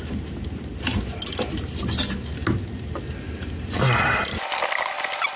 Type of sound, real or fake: real